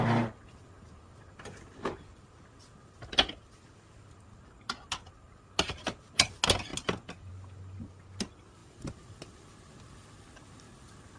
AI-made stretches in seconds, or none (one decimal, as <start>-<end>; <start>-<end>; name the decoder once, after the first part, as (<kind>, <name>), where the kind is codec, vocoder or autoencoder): none